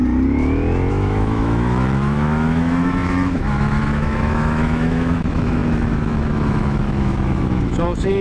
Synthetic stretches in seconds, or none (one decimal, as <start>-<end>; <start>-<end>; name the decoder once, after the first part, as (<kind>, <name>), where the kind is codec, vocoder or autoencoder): 0.9-8.2 (autoencoder, DAC-VAE)